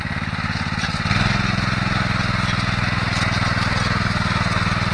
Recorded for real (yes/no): yes